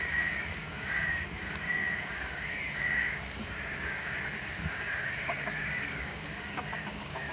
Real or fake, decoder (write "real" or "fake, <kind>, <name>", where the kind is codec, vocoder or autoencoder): fake, codec, DAC